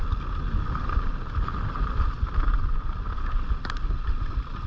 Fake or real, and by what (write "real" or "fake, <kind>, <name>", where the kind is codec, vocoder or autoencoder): real